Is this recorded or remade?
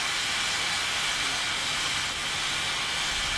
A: recorded